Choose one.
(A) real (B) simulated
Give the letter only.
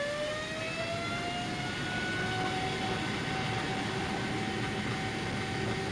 A